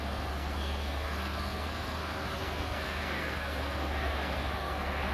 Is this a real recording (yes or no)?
no